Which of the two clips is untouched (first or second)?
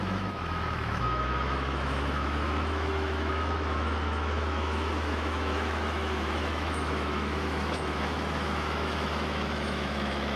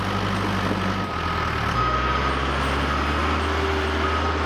second